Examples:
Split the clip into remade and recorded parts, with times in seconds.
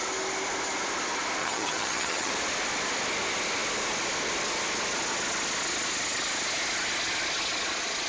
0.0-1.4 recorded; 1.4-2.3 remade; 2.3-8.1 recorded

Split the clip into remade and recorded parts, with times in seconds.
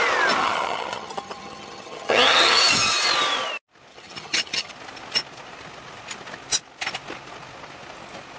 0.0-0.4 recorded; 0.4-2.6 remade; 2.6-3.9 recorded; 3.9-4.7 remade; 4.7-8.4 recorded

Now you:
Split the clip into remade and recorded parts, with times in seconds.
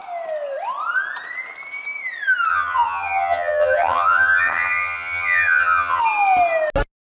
0.0-2.5 recorded; 2.5-6.0 remade; 6.0-7.1 recorded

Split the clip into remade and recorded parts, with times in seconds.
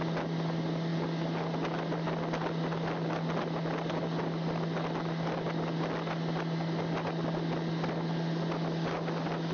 0.0-9.5 recorded